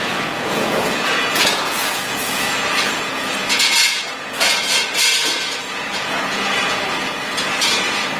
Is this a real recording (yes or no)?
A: no